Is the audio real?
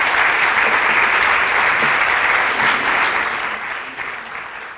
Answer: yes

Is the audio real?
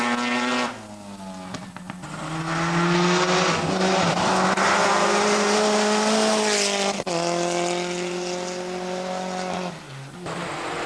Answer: yes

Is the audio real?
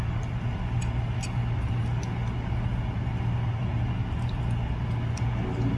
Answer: yes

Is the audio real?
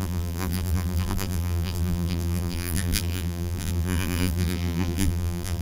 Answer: no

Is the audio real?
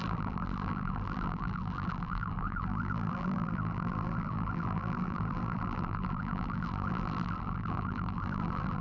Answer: no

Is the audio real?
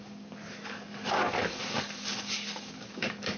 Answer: no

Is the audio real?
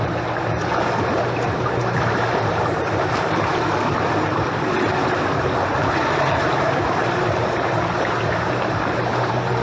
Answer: no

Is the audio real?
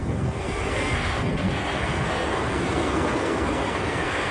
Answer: no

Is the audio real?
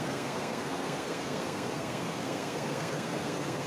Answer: no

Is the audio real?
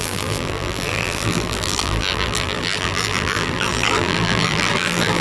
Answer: no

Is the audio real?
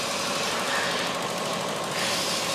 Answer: yes